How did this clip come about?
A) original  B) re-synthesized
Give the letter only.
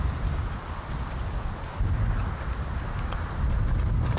A